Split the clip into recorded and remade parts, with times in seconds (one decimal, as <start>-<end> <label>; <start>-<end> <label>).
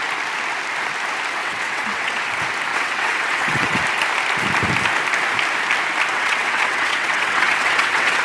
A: 0.0-1.4 recorded; 1.4-2.2 remade; 2.2-2.7 recorded; 2.7-3.8 remade; 3.8-6.1 recorded; 6.1-8.2 remade